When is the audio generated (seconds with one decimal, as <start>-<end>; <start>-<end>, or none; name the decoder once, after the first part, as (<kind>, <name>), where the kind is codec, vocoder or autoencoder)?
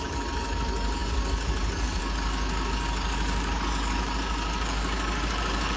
0.0-5.8 (codec, DAC)